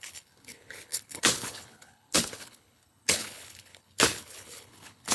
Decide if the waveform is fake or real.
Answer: fake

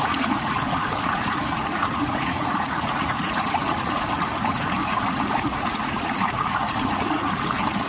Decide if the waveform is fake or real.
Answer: fake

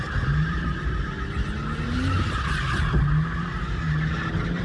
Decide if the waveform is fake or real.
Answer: real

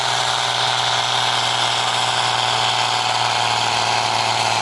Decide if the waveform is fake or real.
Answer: real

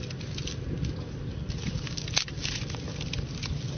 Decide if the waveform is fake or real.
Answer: real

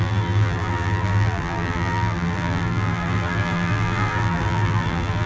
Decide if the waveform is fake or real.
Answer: fake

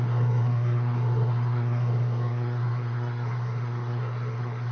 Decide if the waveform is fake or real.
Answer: fake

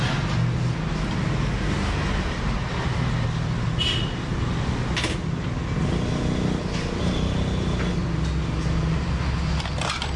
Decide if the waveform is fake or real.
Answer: real